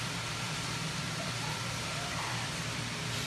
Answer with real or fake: fake